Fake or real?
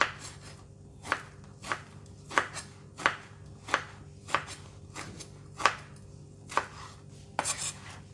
real